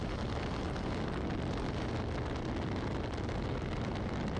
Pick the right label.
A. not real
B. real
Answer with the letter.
B